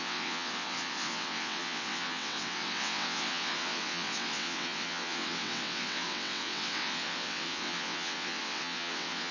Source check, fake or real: fake